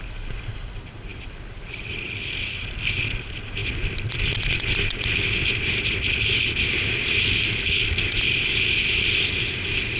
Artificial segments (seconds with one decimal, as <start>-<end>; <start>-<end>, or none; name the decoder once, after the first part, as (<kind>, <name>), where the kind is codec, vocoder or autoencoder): none